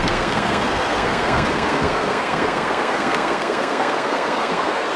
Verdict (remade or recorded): remade